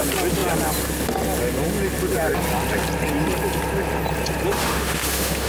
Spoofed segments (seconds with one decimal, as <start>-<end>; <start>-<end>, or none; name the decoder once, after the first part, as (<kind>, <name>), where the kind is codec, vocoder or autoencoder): 4.6-5.5 (autoencoder, DAC-VAE)